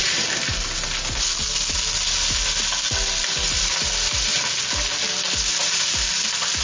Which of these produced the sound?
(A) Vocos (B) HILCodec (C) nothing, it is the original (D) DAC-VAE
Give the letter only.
C